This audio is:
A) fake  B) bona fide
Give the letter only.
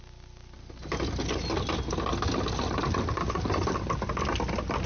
B